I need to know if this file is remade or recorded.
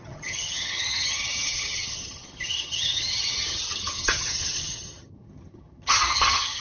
remade